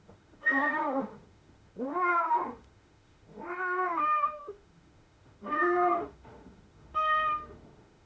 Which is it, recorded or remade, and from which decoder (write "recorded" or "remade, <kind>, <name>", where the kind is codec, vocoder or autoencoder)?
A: remade, autoencoder, DAC-VAE